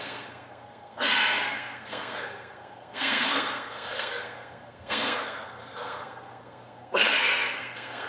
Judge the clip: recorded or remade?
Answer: remade